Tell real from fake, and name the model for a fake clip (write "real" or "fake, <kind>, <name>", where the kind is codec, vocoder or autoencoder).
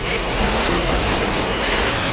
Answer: fake, codec, SNAC